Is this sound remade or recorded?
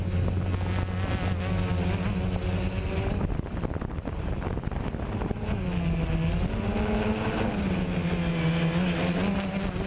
recorded